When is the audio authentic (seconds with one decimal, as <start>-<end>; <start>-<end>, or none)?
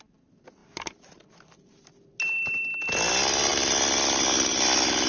0.0-5.1